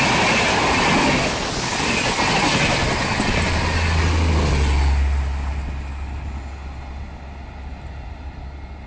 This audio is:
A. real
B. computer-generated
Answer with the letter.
A